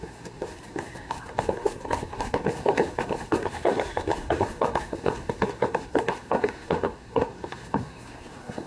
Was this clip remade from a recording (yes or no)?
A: yes